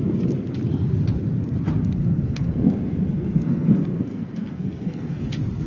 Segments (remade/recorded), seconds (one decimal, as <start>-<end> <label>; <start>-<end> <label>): 0.0-2.0 recorded; 2.0-5.3 remade; 5.3-5.7 recorded